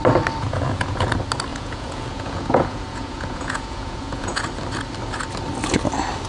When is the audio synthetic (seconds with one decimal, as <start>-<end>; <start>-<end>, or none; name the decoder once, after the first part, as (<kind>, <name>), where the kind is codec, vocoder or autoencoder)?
0.4-1.1 (vocoder, Vocos); 1.5-4.4